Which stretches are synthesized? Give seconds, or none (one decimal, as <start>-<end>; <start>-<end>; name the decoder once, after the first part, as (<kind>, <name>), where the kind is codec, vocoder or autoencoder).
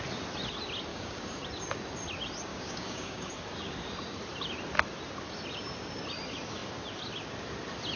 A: 0.9-1.4 (codec, DAC); 2.5-3.3